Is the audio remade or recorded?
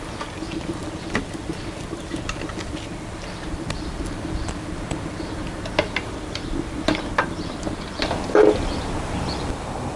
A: remade